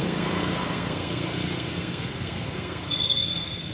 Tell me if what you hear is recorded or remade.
remade